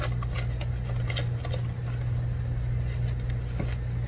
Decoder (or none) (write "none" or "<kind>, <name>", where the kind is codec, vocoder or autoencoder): none